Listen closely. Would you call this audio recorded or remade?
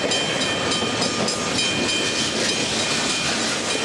recorded